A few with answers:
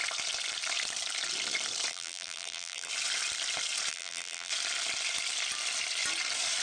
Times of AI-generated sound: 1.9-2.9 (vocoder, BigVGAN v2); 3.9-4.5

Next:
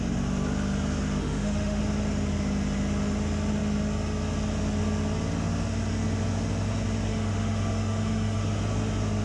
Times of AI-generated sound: 1.2-1.8 (autoencoder, DAC-VAE); 7.1-8.6

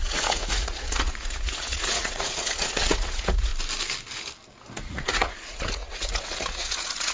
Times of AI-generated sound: 0.0-3.5 (vocoder, Vocos); 4.7-7.1

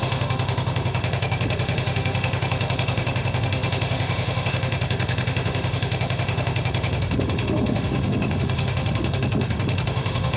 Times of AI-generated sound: 0.0-10.4 (autoencoder, DAC-VAE)

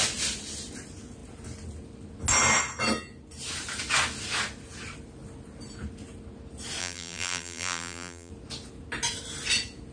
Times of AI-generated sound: 6.8-8.3 (vocoder, BigVGAN v2)

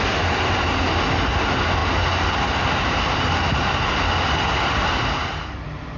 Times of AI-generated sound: none

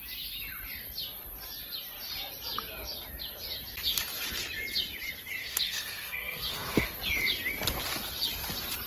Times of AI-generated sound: 5.4-7.0 (codec, SNAC)